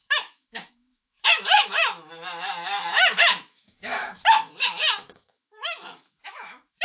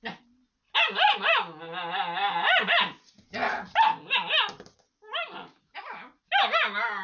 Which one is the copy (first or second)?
first